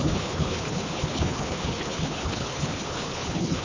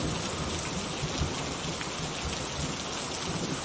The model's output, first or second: first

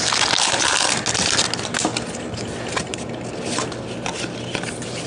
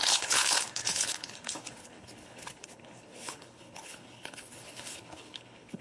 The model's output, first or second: second